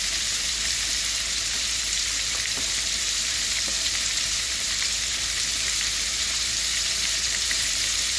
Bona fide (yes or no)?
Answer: no